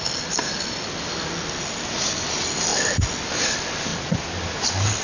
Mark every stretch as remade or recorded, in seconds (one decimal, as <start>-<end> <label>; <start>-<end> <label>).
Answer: 0.0-5.0 recorded